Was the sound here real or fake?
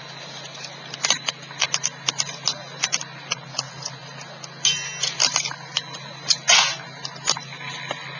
real